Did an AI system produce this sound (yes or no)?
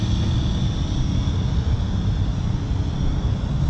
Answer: no